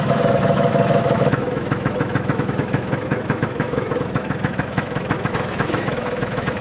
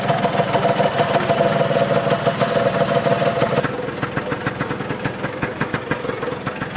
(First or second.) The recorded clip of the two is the second